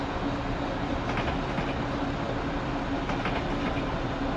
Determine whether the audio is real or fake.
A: real